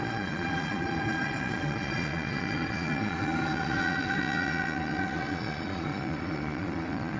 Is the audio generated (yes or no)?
yes